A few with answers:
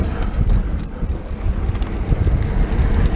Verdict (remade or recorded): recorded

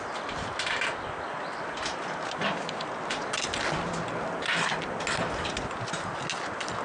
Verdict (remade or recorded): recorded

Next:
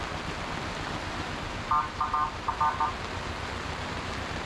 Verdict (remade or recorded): recorded